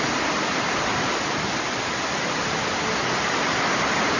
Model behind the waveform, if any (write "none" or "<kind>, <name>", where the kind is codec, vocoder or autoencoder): none